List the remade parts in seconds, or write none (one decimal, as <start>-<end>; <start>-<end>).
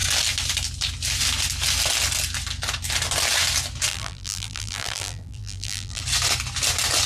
3.9-6.0